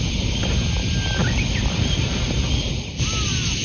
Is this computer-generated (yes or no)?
no